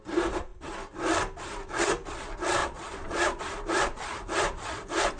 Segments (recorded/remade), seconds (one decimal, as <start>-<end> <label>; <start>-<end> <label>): 0.0-2.6 recorded; 2.6-3.4 remade; 3.4-5.2 recorded